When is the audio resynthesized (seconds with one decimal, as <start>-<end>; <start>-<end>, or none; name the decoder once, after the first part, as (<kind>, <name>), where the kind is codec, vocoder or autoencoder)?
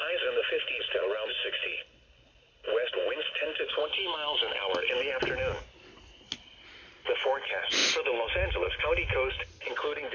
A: none